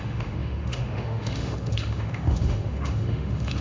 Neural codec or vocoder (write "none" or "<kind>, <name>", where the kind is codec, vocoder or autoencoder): autoencoder, DAC-VAE